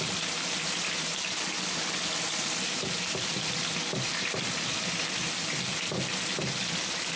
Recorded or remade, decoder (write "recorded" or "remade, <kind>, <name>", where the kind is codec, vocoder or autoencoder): recorded